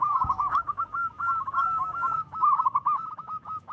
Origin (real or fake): fake